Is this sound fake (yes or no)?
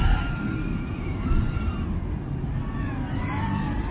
no